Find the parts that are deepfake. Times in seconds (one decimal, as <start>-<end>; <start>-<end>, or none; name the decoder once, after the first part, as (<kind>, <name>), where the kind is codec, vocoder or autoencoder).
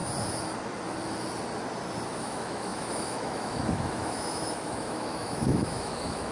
2.2-6.3 (autoencoder, DAC-VAE)